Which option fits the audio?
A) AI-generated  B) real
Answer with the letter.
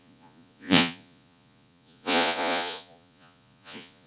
A